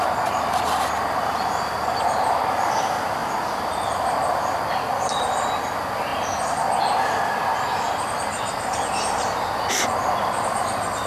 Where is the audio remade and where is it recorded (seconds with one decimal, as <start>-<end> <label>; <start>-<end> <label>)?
0.0-11.1 recorded